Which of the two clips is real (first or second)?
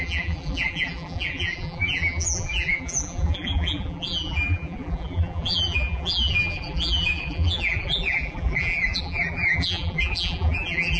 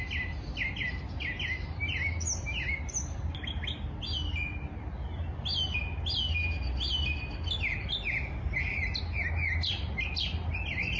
second